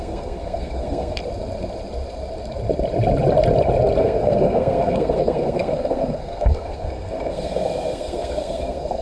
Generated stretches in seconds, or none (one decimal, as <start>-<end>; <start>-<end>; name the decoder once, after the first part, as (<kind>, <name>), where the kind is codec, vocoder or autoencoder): 0.0-1.2 (codec, SNAC); 4.0-9.0